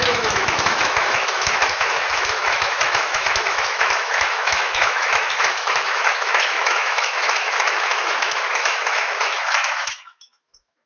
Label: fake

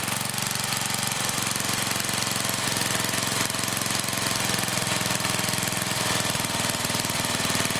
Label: real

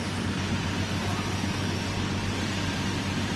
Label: real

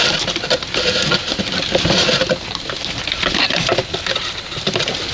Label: real